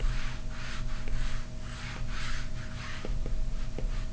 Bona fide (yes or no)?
yes